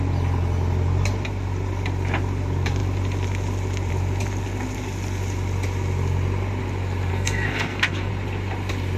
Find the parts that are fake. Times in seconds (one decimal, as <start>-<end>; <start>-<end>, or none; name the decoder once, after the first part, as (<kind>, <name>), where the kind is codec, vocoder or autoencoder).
7.1-8.1 (codec, SNAC)